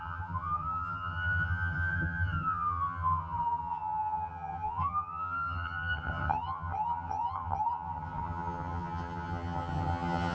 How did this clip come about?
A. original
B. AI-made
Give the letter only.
B